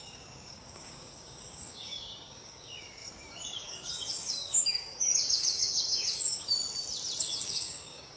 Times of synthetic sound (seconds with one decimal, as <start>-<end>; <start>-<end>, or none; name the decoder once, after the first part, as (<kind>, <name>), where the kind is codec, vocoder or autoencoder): 0.0-6.6 (codec, DAC); 7.2-8.2